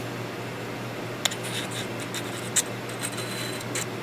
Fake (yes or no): no